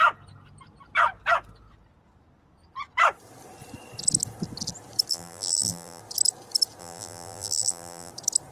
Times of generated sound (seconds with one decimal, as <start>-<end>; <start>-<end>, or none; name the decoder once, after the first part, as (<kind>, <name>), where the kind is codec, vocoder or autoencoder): 5.1-6.0 (vocoder, BigVGAN v2); 6.8-8.1